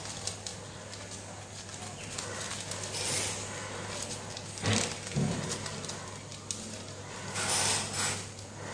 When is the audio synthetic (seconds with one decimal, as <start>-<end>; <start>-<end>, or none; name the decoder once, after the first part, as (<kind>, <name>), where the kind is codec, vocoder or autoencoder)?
none